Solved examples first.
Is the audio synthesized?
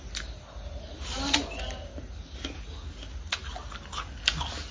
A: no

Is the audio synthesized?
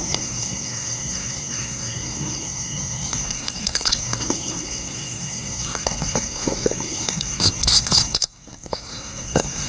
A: yes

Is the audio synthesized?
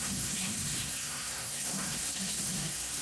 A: yes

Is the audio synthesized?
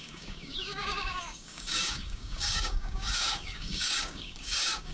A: yes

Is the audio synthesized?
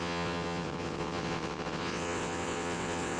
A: yes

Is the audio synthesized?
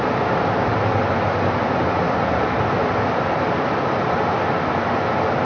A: no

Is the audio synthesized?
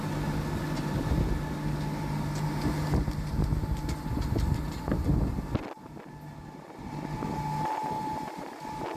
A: no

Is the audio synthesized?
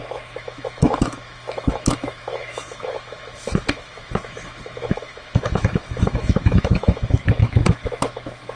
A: yes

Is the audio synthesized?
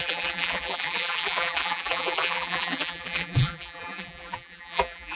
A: yes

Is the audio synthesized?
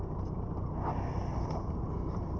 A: no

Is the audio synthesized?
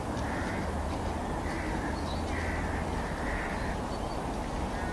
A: no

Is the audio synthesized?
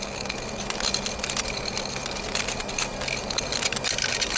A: no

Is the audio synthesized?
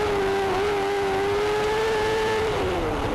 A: yes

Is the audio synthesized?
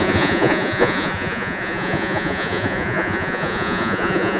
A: yes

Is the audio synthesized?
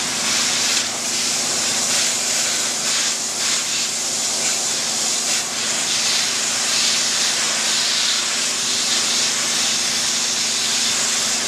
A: no